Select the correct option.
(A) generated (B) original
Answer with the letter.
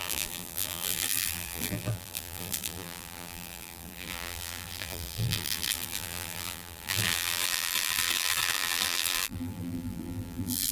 A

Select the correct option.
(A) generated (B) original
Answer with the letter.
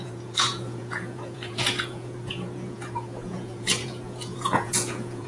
A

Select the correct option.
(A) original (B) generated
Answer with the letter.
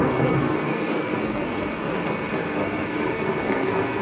B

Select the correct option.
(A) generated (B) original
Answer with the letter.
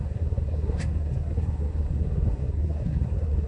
A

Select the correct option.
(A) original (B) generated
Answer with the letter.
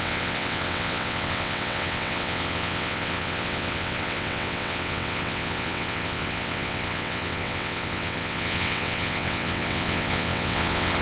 B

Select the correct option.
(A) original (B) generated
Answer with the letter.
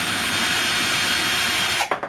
A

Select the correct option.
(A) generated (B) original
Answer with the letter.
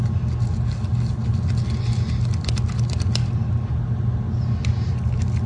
B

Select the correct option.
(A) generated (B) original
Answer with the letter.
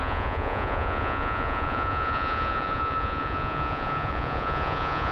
A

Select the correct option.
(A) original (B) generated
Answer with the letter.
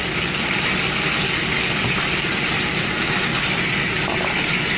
A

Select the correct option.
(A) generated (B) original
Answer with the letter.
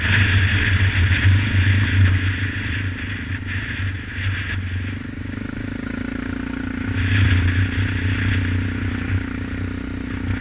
B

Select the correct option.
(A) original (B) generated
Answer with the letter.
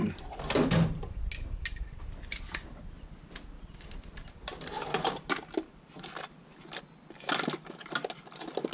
A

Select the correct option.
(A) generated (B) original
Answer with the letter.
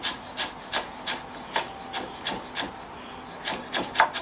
B